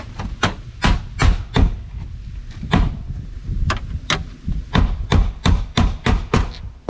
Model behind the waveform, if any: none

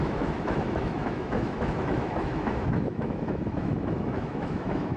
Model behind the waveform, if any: autoencoder, DAC-VAE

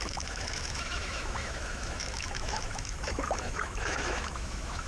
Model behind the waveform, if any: autoencoder, DAC-VAE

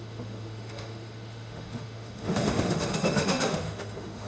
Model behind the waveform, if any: autoencoder, DAC-VAE